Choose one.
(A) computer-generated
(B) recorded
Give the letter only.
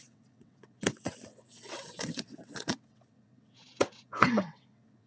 A